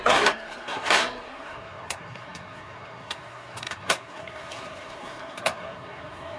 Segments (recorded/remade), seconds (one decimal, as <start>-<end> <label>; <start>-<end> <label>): 0.0-6.4 remade